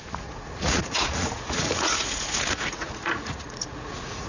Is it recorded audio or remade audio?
remade